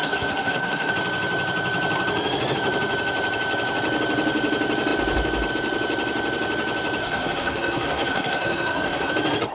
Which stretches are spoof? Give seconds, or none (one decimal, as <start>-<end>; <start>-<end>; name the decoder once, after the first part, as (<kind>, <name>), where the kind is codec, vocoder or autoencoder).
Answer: 0.0-0.9 (codec, SNAC); 7.0-9.1